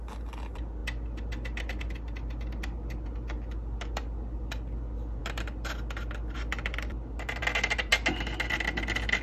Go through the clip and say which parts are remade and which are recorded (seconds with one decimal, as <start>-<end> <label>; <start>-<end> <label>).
0.0-9.2 recorded